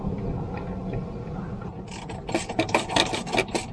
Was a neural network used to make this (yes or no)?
no